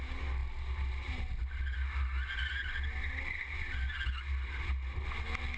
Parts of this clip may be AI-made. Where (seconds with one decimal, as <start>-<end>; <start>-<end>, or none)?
none